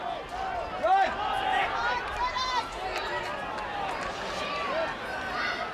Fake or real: real